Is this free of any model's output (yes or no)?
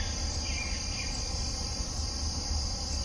yes